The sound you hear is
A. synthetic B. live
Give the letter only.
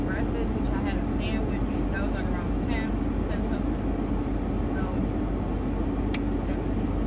B